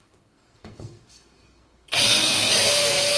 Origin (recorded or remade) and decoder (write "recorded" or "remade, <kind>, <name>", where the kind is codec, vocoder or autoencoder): remade, codec, SNAC